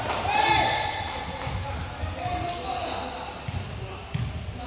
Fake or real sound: real